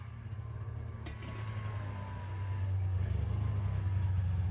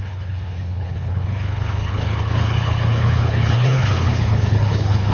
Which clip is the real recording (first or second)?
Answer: first